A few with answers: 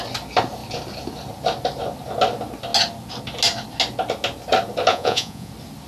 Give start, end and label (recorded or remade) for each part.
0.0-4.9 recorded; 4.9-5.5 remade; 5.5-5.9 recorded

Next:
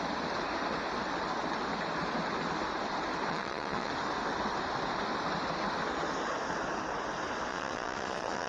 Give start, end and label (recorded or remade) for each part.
0.0-3.3 recorded; 3.3-3.9 remade; 3.9-7.5 recorded; 7.5-8.5 remade

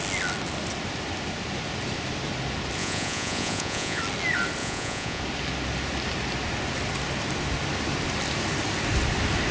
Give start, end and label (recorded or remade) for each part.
0.0-2.8 recorded; 2.8-4.0 remade; 4.0-4.6 recorded; 4.6-5.2 remade; 5.2-9.5 recorded

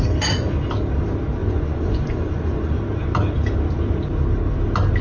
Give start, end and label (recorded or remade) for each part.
0.0-1.4 recorded; 1.4-2.7 remade; 2.7-5.0 recorded

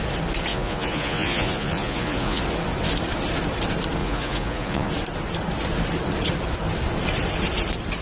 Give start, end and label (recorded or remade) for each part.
0.0-0.5 recorded; 0.5-2.4 remade; 2.4-4.0 recorded; 4.0-4.9 remade; 4.9-8.0 recorded